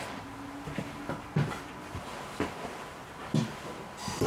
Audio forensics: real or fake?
real